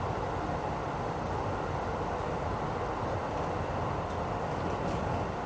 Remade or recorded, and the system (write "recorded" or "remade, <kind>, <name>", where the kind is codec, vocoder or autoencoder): recorded